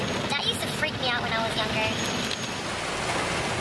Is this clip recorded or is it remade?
recorded